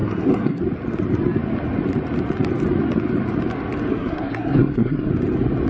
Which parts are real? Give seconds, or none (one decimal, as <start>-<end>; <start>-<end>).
0.6-3.9; 5.1-5.7